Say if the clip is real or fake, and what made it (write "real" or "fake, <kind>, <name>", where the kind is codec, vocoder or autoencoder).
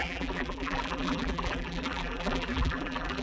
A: fake, vocoder, BigVGAN v2